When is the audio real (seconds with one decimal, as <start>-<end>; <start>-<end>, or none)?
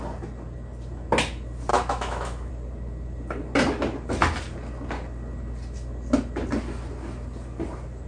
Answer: 0.0-1.7; 2.5-8.1